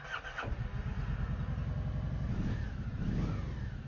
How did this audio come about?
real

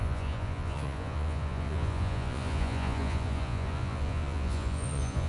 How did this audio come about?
fake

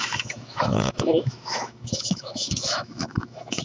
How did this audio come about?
fake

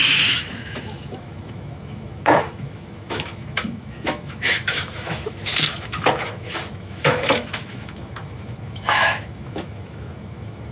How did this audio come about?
fake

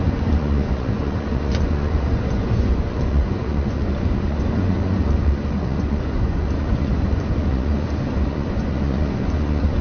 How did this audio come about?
fake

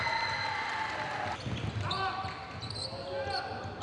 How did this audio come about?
real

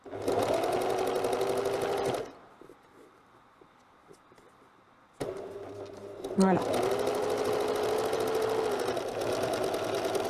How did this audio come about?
real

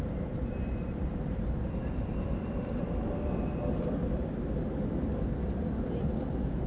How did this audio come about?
real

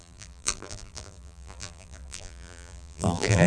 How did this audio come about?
fake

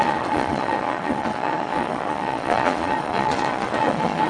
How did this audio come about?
fake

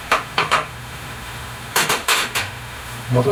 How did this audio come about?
fake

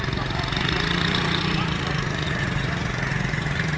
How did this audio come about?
fake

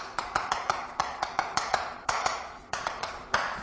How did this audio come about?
fake